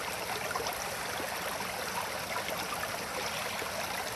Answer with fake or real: real